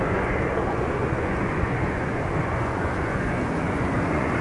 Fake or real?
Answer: fake